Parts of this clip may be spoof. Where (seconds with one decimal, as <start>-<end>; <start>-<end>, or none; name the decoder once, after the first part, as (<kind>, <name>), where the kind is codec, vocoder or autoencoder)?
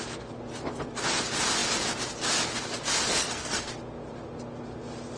3.2-3.7 (codec, SNAC)